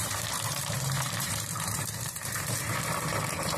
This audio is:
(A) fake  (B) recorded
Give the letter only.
A